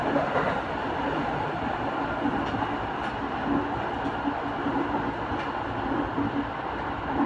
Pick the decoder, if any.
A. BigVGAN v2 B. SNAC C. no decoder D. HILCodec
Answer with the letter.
C